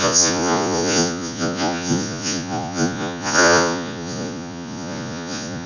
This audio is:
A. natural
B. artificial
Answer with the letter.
B